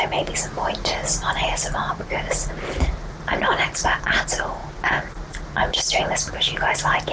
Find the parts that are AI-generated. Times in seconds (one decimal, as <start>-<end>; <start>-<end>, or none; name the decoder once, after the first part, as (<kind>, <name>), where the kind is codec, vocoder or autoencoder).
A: none